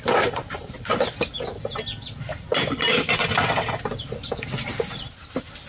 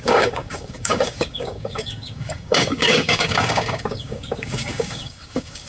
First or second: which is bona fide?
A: first